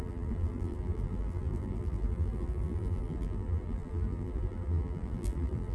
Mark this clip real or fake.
fake